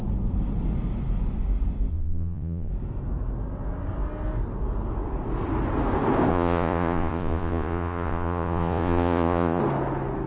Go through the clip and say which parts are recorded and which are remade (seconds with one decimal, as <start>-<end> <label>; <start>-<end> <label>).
0.0-1.9 recorded; 1.9-2.7 remade; 2.7-6.3 recorded; 6.3-9.6 remade; 9.6-10.3 recorded

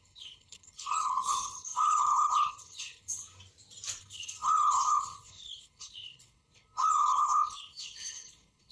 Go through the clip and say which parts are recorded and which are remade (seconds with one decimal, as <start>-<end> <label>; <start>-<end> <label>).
0.0-3.2 remade; 3.2-4.0 recorded; 4.0-8.7 remade

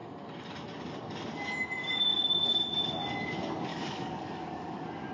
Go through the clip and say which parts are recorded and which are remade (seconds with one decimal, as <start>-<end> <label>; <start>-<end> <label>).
0.0-1.8 recorded; 1.8-2.6 remade; 2.6-3.7 recorded; 3.7-5.1 remade

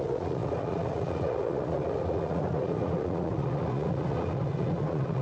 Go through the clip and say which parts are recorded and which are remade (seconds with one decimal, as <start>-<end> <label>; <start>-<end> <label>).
0.0-5.2 remade

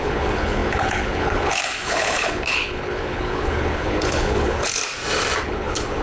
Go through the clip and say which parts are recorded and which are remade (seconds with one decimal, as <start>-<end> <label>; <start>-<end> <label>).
0.0-4.8 remade; 4.8-5.4 recorded; 5.4-6.0 remade

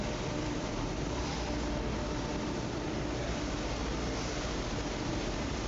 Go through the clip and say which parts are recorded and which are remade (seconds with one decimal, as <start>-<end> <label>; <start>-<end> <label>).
0.0-1.3 remade; 1.3-3.3 recorded; 3.3-3.8 remade; 3.8-4.4 recorded; 4.4-5.7 remade

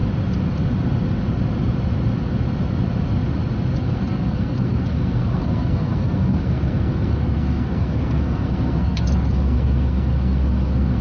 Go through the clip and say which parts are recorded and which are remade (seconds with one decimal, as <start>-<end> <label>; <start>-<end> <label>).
0.0-3.8 recorded; 3.8-11.0 remade